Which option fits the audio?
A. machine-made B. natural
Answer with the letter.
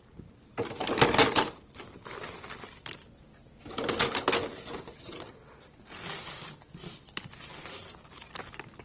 B